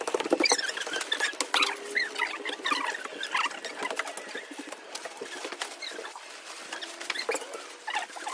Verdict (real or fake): real